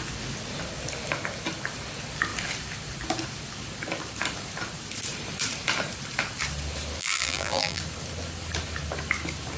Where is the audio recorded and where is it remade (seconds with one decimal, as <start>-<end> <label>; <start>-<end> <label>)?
0.0-7.0 recorded; 7.0-7.8 remade; 7.8-9.6 recorded